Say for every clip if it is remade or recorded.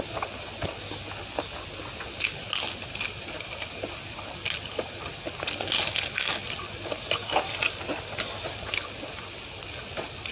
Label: recorded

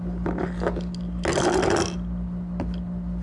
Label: recorded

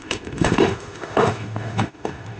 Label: remade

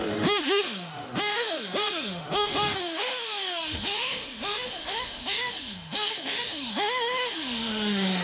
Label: remade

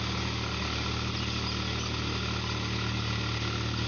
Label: recorded